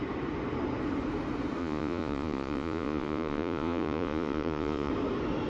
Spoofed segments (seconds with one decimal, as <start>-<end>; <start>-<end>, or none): 1.6-4.9